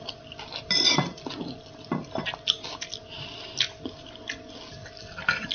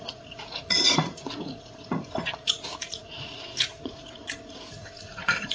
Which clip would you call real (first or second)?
first